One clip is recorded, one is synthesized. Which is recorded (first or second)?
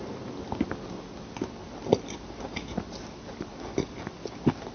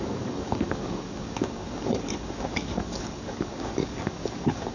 first